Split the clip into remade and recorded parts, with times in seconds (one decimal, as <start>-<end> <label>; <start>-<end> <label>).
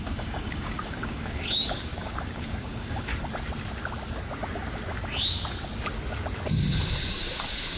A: 0.0-3.1 remade; 3.1-7.1 recorded; 7.1-7.8 remade